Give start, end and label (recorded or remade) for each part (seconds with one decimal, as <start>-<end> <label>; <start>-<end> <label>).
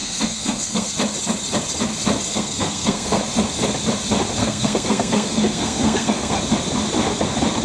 0.0-0.9 remade; 0.9-2.3 recorded; 2.3-3.2 remade; 3.2-4.4 recorded; 4.4-6.4 remade; 6.4-7.6 recorded